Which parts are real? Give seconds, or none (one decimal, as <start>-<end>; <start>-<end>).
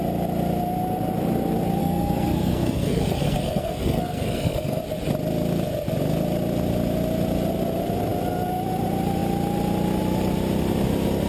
0.0-1.8; 4.8-11.3